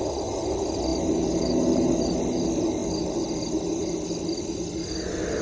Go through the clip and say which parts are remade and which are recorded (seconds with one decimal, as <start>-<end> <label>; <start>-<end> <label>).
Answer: 0.0-5.4 recorded